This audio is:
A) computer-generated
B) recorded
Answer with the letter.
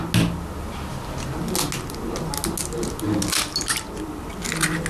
B